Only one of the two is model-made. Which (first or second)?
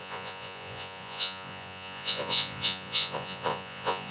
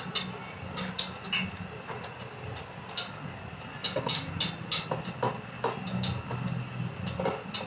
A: first